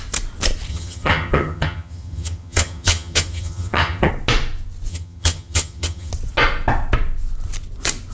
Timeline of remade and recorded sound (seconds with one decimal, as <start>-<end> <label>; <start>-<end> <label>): 0.0-0.7 recorded; 0.7-4.1 remade; 4.1-4.9 recorded; 4.9-6.1 remade; 6.1-8.1 recorded